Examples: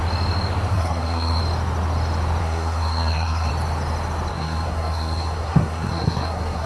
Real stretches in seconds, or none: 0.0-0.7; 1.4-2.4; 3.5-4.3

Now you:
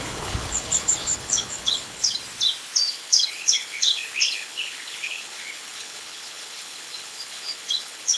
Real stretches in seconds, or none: 2.2-2.9

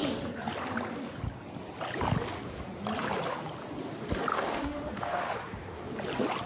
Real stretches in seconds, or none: 0.0-4.3; 5.8-6.5

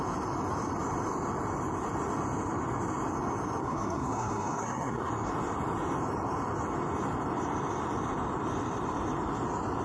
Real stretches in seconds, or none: 0.0-3.6; 5.1-9.8

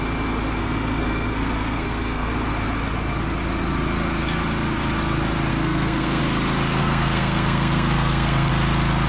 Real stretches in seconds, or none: 0.0-0.6; 2.3-5.5; 6.2-6.8; 8.5-9.1